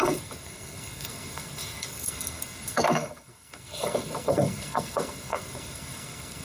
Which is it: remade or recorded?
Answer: remade